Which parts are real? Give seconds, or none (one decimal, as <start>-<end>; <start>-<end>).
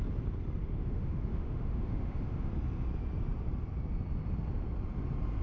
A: 0.0-0.6; 2.5-5.4